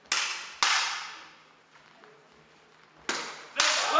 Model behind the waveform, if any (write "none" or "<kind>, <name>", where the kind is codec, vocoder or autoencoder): none